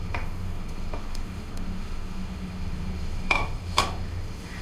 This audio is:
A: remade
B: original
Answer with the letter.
A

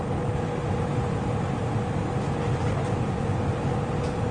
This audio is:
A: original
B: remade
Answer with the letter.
A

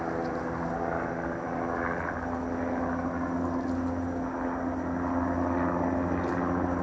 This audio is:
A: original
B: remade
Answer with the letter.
A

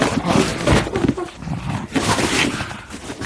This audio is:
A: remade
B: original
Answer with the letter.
B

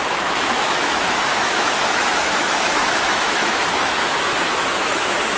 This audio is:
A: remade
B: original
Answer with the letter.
A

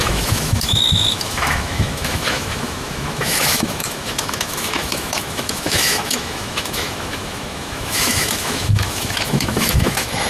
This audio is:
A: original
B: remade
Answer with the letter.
B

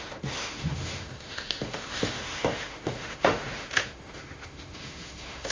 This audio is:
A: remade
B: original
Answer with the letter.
A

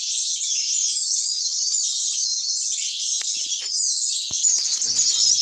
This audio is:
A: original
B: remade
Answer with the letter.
A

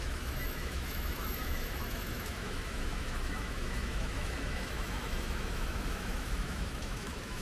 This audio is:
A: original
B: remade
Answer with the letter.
B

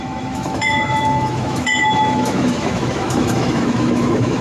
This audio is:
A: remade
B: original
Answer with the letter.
A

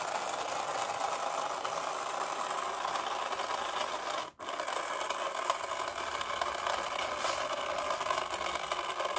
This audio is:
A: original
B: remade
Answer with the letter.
A